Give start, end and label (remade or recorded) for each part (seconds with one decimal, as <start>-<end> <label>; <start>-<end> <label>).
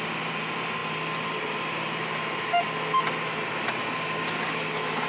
0.0-5.1 recorded